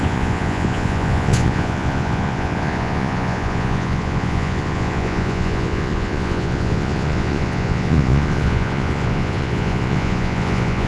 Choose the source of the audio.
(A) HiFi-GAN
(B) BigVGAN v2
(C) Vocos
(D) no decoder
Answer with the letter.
C